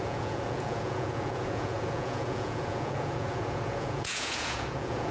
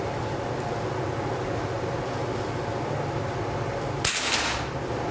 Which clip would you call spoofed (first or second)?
first